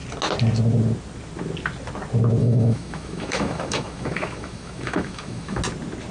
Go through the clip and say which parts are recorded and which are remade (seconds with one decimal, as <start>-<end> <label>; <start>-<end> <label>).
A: 0.0-2.4 recorded; 2.4-5.6 remade; 5.6-6.1 recorded